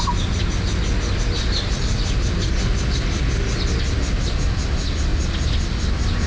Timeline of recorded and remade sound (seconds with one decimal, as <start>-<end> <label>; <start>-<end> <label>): 0.0-6.3 recorded